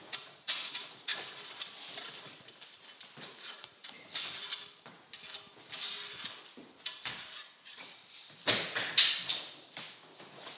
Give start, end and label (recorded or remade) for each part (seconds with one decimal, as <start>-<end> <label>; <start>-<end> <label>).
0.0-1.1 remade; 1.1-3.2 recorded; 3.2-3.8 remade; 3.8-7.3 recorded; 7.3-8.0 remade; 8.0-10.2 recorded; 10.2-10.6 remade